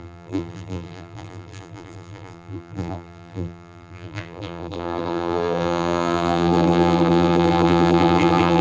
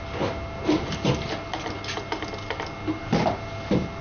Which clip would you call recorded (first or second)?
second